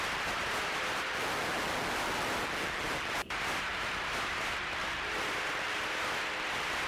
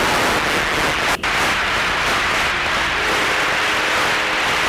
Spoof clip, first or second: first